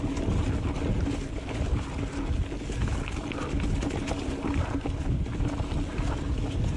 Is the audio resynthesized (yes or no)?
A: no